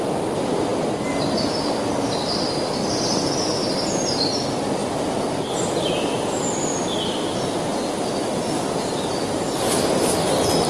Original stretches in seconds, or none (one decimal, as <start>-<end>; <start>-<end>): 0.0-10.7